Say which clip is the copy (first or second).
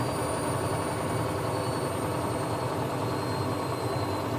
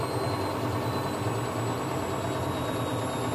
first